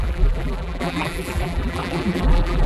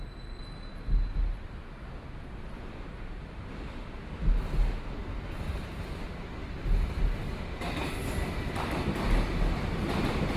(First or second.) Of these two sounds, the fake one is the first